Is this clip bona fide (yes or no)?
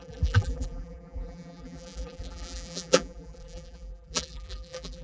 no